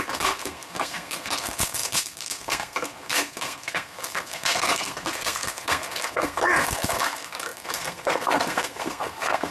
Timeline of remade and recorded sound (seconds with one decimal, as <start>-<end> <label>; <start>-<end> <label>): 0.0-9.5 remade